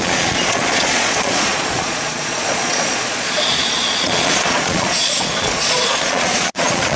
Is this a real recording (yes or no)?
no